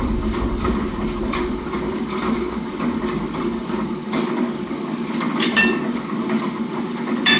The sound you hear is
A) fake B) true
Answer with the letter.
A